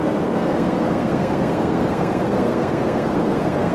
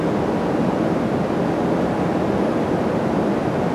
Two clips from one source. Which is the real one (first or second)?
second